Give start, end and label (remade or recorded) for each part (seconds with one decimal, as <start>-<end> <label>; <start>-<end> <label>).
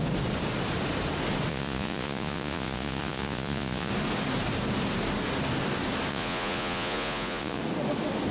0.0-1.5 recorded; 1.5-3.9 remade; 3.9-6.1 recorded; 6.1-7.6 remade; 7.6-8.3 recorded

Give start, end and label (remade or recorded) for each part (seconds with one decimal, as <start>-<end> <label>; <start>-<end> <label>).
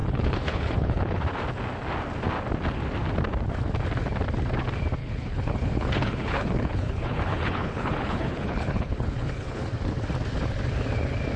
0.0-1.2 remade; 1.2-5.0 recorded; 5.0-9.7 remade; 9.7-11.4 recorded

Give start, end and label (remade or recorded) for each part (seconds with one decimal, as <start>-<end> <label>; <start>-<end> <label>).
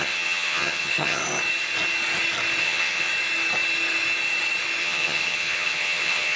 0.0-1.2 remade; 1.2-2.6 recorded; 2.6-3.1 remade; 3.1-4.8 recorded; 4.8-6.4 remade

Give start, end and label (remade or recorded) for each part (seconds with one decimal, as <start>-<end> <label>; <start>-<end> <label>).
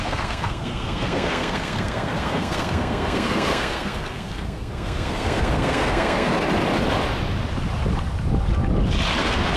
0.0-6.3 remade; 6.3-9.2 recorded; 9.2-9.6 remade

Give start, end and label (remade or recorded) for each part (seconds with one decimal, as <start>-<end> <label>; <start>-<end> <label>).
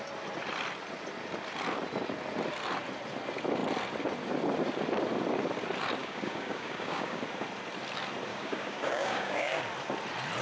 0.0-6.0 recorded; 6.0-7.2 remade; 7.2-8.3 recorded; 8.3-9.6 remade; 9.6-10.4 recorded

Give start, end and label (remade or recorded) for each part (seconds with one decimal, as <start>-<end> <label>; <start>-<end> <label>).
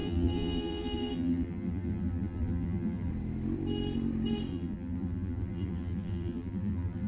0.0-3.1 remade; 3.1-4.5 recorded; 4.5-7.1 remade